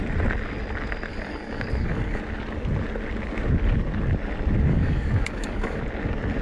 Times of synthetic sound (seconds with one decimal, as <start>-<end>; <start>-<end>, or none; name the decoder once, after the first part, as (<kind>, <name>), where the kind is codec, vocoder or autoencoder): 1.1-2.2 (codec, DAC); 4.7-5.8